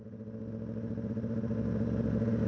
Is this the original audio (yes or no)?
yes